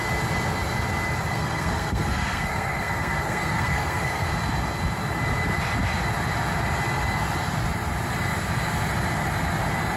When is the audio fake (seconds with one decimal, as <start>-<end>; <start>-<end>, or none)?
1.3-4.3